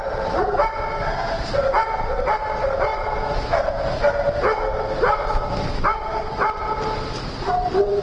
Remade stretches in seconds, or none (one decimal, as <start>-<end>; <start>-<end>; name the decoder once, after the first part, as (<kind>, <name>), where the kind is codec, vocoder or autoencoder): none